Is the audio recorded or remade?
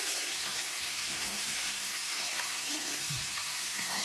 remade